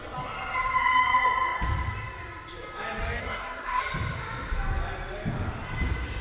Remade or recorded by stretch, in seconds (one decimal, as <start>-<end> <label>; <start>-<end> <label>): 0.0-3.2 recorded; 3.2-3.8 remade; 3.8-6.2 recorded